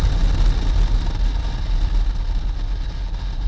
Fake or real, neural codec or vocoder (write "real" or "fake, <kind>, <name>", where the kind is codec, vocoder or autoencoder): real